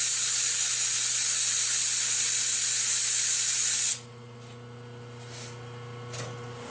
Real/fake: real